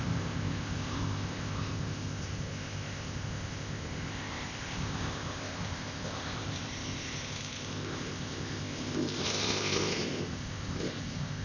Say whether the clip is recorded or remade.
remade